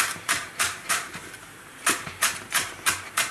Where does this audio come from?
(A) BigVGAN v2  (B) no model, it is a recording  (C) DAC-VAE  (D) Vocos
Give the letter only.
A